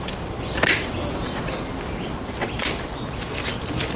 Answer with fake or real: real